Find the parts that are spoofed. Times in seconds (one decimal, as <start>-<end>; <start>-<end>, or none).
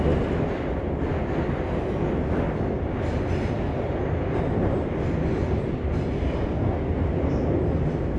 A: none